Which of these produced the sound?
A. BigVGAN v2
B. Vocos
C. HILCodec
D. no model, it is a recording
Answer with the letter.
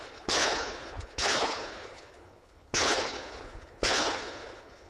C